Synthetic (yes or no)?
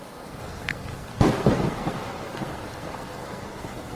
yes